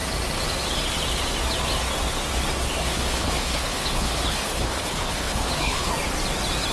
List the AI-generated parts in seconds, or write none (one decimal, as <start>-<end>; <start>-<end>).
2.8-5.9